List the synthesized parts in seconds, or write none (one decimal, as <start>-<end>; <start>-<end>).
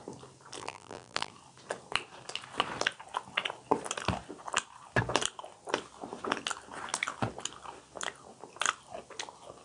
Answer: 0.6-1.3